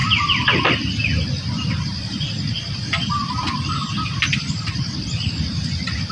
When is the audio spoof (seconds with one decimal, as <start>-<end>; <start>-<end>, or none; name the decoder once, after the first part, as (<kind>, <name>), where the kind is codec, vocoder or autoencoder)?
none